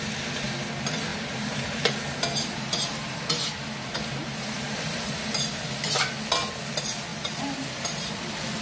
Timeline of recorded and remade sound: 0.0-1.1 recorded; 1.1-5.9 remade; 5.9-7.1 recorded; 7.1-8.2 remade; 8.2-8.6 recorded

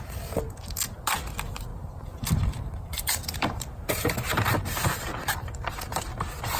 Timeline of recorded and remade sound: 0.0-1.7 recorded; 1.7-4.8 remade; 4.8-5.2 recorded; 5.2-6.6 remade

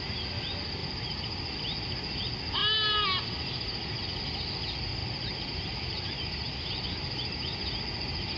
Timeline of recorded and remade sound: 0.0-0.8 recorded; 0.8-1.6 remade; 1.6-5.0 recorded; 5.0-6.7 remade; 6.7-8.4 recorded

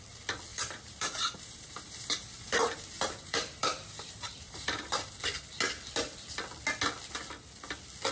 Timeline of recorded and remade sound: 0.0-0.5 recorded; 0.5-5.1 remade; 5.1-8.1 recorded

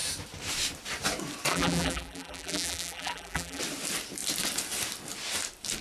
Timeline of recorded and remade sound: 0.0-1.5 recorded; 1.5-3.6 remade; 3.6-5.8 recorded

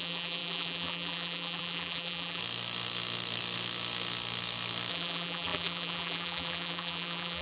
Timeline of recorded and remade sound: 0.0-2.4 remade; 2.4-4.9 recorded; 4.9-7.4 remade

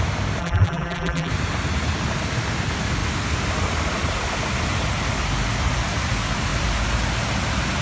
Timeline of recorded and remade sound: 0.0-0.4 recorded; 0.4-1.3 remade; 1.3-7.8 recorded

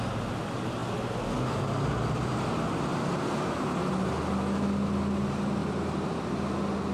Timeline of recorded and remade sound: 0.0-2.9 recorded; 2.9-3.9 remade; 3.9-5.6 recorded; 5.6-6.3 remade; 6.3-6.9 recorded